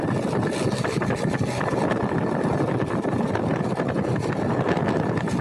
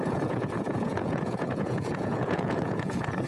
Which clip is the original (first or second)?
first